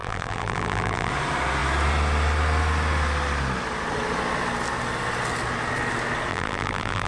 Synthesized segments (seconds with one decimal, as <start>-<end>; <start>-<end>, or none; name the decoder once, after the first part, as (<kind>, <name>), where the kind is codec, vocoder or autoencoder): 0.0-1.1 (vocoder, BigVGAN v2); 6.3-7.1